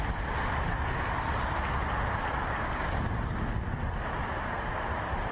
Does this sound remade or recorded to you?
recorded